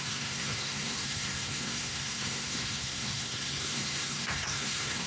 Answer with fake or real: fake